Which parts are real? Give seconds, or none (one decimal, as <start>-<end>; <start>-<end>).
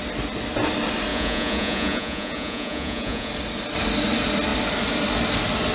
0.0-1.1; 3.3-5.7